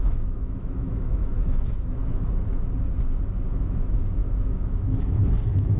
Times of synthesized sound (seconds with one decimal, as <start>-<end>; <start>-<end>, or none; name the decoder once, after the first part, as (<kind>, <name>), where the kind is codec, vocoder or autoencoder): 0.0-2.0 (autoencoder, DAC-VAE); 3.5-5.8